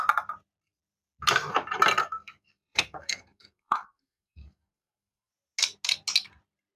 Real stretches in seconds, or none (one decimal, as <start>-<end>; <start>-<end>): 0.0-2.0; 5.3-6.8